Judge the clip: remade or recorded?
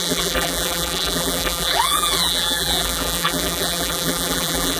remade